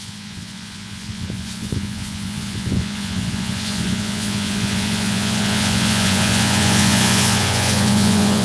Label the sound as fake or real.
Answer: fake